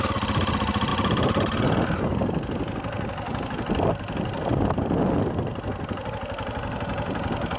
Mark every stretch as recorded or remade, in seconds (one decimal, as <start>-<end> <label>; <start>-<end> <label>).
0.0-7.6 recorded